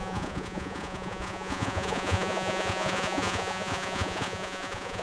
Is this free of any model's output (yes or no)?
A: no